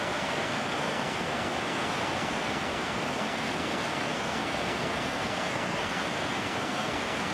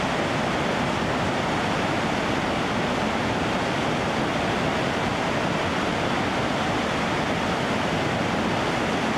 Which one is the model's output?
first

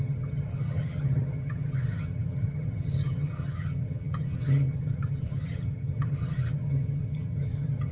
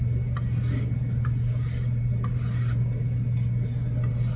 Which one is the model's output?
first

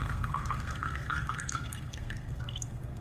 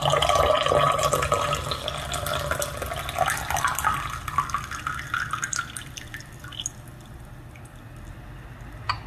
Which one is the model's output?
first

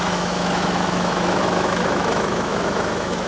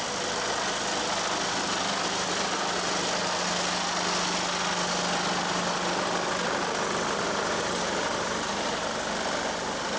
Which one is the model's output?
first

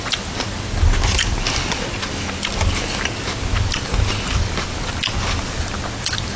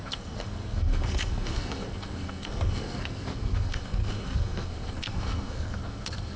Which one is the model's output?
second